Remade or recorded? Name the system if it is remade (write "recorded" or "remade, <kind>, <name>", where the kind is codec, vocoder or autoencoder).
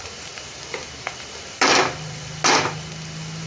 recorded